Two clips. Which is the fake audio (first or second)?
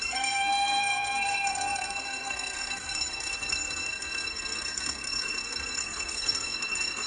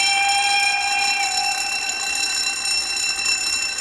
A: first